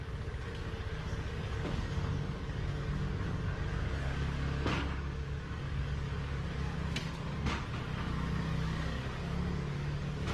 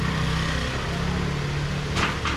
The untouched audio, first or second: second